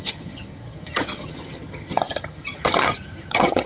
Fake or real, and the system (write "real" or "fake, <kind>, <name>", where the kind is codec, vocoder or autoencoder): fake, vocoder, HiFi-GAN